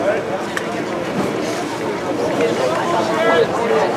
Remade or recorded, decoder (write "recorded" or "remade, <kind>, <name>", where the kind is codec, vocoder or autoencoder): recorded